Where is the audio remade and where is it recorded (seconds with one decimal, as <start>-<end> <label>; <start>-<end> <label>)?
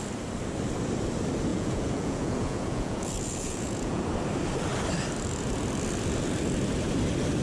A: 0.0-1.5 recorded; 1.5-4.0 remade; 4.0-7.4 recorded